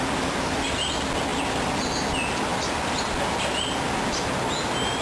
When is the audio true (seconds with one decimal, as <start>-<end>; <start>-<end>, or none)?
0.0-5.0